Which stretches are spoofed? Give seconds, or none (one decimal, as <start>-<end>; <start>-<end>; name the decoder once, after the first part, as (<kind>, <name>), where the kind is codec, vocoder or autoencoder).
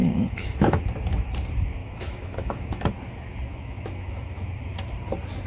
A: 0.0-0.8 (autoencoder, DAC-VAE); 1.8-2.9; 3.5-4.5